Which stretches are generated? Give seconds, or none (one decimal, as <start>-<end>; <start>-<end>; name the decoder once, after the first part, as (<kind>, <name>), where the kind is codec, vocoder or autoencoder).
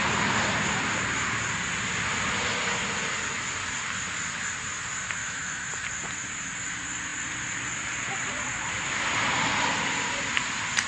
5.2-5.7 (autoencoder, DAC-VAE)